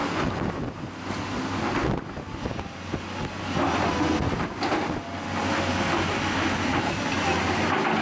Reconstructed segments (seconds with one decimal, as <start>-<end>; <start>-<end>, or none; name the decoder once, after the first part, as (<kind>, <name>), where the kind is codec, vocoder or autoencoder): none